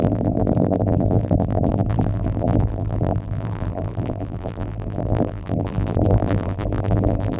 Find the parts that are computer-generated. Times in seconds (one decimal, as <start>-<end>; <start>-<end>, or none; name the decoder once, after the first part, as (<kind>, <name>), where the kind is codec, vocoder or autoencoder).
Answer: 0.0-7.4 (vocoder, BigVGAN v2)